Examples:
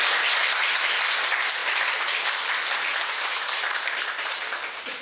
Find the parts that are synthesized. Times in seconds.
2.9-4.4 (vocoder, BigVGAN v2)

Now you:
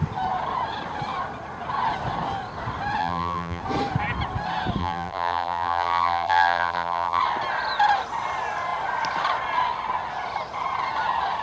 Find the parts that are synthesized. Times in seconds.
3.0-3.6 (vocoder, BigVGAN v2); 4.8-7.2

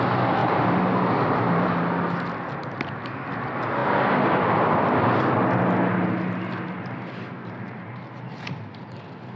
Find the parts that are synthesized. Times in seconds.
0.4-1.8 (vocoder, BigVGAN v2); 7.4-9.0

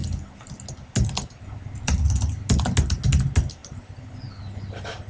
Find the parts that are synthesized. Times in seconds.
3.6-4.1 (vocoder, BigVGAN v2)

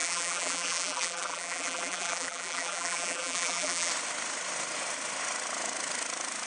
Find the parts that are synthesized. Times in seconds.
0.0-3.9 (vocoder, BigVGAN v2)